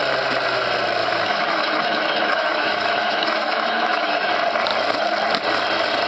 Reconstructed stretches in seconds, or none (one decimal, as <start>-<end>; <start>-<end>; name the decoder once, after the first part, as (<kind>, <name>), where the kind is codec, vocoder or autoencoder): 1.0-4.3 (autoencoder, DAC-VAE)